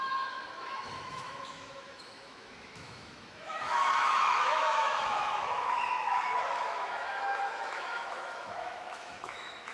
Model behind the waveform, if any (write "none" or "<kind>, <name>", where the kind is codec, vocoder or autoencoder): autoencoder, DAC-VAE